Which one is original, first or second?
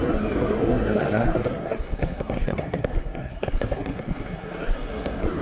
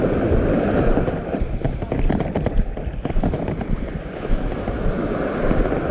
second